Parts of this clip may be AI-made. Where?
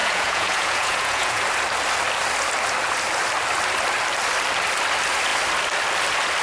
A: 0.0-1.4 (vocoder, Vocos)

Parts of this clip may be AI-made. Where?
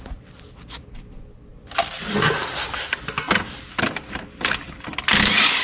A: none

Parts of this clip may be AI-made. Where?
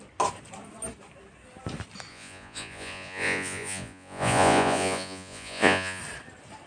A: 2.1-6.0 (vocoder, Vocos)